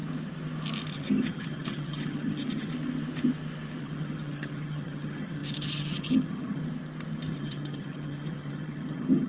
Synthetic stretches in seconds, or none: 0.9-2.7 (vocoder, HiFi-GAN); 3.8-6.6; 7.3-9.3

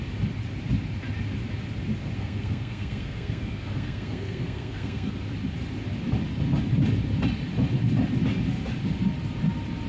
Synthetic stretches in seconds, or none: 2.0-5.1 (codec, SNAC)

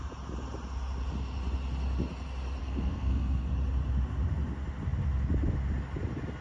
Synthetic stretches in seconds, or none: 2.6-3.5 (codec, SNAC)

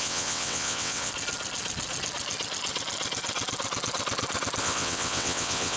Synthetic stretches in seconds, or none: 0.0-1.1 (vocoder, WaveNeXt); 4.6-5.8